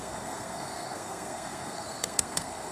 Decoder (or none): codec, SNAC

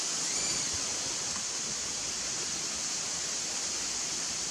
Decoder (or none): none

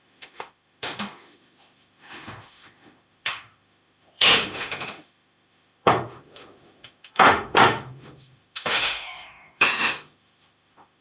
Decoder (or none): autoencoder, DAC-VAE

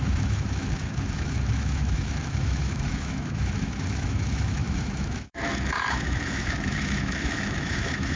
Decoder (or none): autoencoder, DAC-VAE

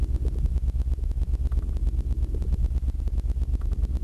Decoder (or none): none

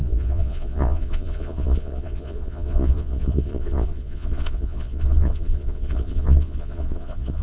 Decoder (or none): vocoder, Vocos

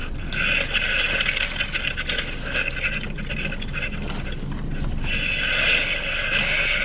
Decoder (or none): none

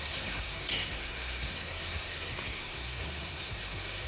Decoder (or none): codec, SNAC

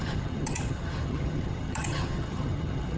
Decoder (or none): vocoder, HiFi-GAN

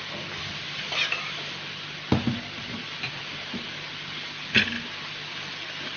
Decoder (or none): vocoder, BigVGAN v2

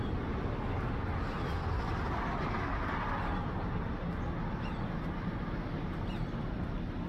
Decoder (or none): none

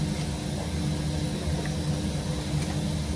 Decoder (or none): none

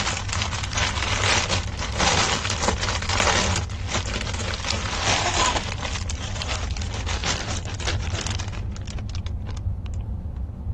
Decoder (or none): none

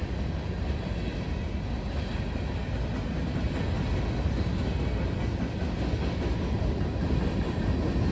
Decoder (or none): none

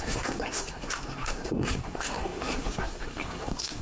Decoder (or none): codec, SNAC